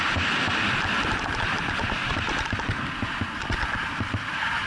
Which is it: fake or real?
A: real